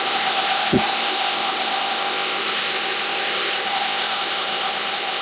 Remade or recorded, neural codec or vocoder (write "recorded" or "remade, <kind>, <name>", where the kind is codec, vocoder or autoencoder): remade, codec, ZipCodec